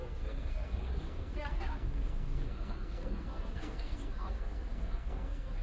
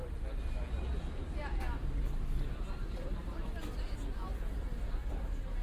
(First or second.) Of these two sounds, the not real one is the first